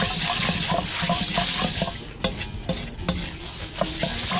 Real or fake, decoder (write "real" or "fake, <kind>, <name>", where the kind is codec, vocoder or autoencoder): real